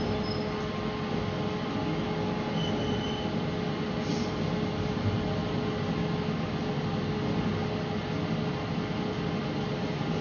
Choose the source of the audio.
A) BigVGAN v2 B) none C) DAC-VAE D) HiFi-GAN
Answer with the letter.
B